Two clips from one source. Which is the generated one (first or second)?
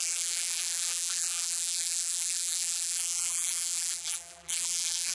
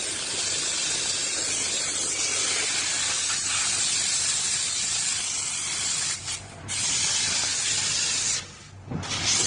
first